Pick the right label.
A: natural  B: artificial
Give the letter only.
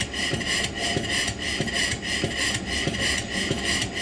A